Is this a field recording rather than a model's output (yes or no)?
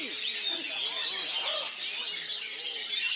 yes